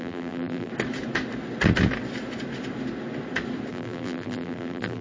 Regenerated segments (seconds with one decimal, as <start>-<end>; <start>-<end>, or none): 0.0-0.7; 3.7-5.0